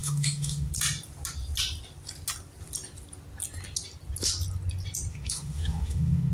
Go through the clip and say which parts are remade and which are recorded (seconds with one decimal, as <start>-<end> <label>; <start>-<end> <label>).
0.0-0.7 remade; 0.7-5.1 recorded; 5.1-6.3 remade